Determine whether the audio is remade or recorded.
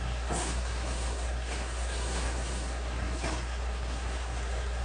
remade